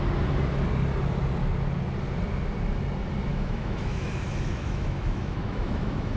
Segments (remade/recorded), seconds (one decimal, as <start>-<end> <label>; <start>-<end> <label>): 0.0-3.3 recorded; 3.3-6.2 remade